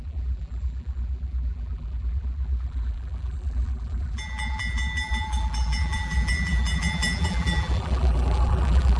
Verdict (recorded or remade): remade